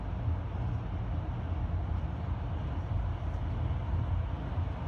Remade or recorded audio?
recorded